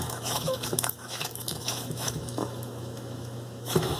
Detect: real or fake fake